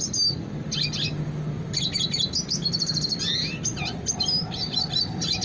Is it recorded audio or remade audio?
recorded